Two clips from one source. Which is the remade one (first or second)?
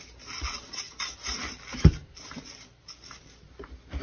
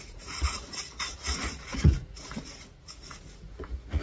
second